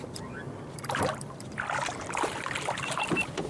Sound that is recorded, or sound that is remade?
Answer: remade